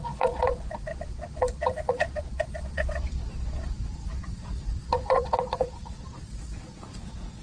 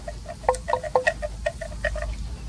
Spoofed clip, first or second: first